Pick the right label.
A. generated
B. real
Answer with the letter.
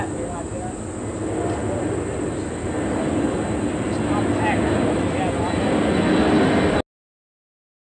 B